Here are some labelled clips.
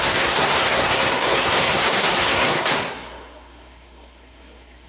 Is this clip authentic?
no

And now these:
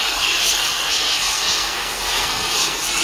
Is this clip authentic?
no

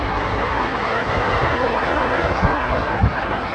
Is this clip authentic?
no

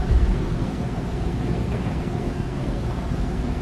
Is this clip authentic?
no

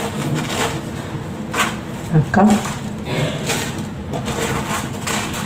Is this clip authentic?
yes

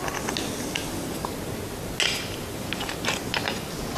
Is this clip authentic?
yes